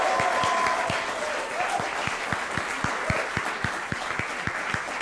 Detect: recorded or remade recorded